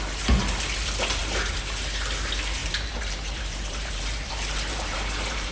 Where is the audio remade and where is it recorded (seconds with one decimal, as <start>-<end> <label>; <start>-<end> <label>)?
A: 0.0-1.2 recorded; 1.2-1.7 remade; 1.7-2.6 recorded; 2.6-5.5 remade